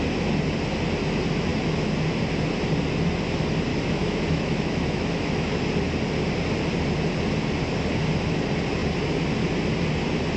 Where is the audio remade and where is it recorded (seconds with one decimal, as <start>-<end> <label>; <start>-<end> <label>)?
0.0-3.7 recorded; 3.7-5.7 remade; 5.7-10.4 recorded